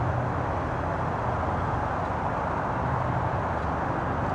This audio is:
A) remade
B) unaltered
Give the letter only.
B